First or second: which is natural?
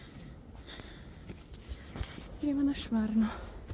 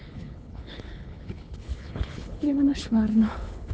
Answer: first